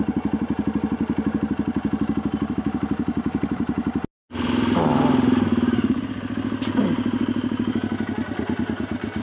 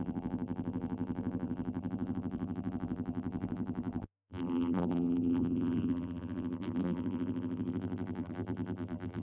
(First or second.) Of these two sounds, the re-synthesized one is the second